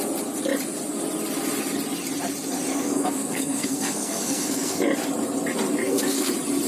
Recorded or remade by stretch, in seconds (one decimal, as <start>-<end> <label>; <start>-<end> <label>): 0.0-2.7 recorded; 2.7-4.8 remade; 4.8-5.8 recorded; 5.8-6.3 remade; 6.3-6.7 recorded